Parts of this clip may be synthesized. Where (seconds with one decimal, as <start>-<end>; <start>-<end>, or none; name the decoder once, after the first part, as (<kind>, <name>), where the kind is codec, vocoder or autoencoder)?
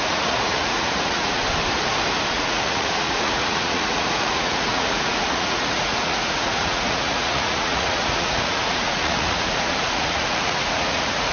0.0-1.4 (vocoder, Vocos); 2.3-11.3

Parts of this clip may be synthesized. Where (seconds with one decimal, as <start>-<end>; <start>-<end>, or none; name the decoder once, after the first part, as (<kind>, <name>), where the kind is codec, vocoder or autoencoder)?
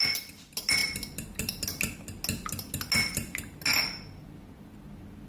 none